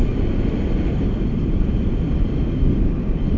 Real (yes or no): yes